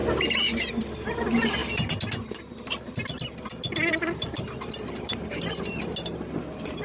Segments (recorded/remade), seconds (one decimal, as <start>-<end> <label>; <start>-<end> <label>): 0.0-3.9 recorded; 3.9-5.9 remade; 5.9-6.8 recorded